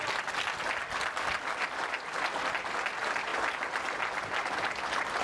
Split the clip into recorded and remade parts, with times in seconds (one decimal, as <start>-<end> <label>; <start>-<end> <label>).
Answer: 0.0-5.2 recorded

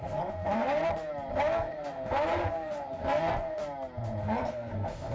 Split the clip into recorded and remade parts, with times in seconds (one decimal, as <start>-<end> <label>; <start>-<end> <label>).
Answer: 0.0-0.8 remade; 0.8-1.4 recorded; 1.4-3.6 remade; 3.6-4.2 recorded; 4.2-5.1 remade

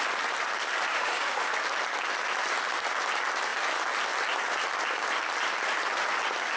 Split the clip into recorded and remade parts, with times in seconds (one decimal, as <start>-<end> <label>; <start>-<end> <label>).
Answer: 0.0-0.9 recorded; 0.9-1.5 remade; 1.5-6.6 recorded

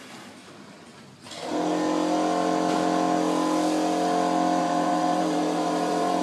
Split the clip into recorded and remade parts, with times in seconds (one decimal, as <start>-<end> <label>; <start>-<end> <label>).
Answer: 0.0-0.9 remade; 0.9-4.6 recorded; 4.6-6.2 remade

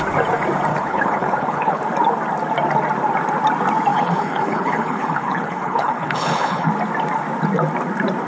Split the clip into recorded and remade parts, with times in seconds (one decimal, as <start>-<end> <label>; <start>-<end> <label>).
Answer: 0.0-0.7 recorded; 0.7-1.8 remade; 1.8-3.9 recorded; 3.9-6.7 remade; 6.7-8.3 recorded

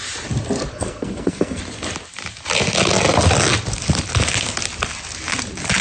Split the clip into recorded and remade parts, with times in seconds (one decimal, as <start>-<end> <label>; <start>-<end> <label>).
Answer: 0.0-0.7 recorded; 0.7-1.6 remade; 1.6-5.8 recorded

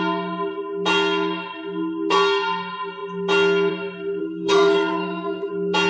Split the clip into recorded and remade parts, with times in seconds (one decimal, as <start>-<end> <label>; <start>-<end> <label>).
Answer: 0.0-4.2 recorded; 4.2-5.5 remade; 5.5-5.9 recorded

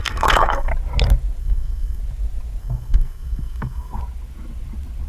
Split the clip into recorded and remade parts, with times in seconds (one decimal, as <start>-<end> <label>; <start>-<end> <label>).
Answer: 0.0-0.7 remade; 0.7-1.4 recorded; 1.4-2.0 remade; 2.0-2.6 recorded; 2.6-4.0 remade; 4.0-5.1 recorded